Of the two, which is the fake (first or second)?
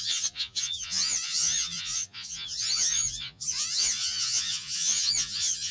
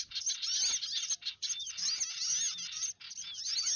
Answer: first